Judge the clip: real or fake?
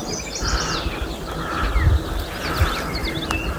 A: real